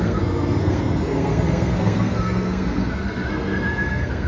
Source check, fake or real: fake